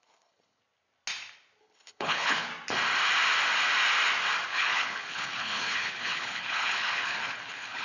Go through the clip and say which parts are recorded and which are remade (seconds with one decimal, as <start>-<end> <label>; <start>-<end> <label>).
0.0-0.6 remade; 0.6-1.6 recorded; 1.6-2.5 remade; 2.5-4.5 recorded; 4.5-7.8 remade